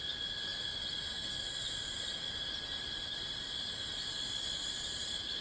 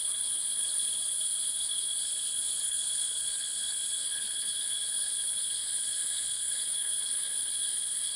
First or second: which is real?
first